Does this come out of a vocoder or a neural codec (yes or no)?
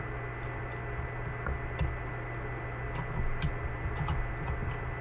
no